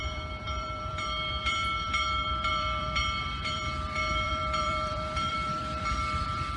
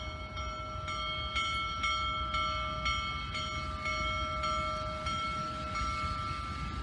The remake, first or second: first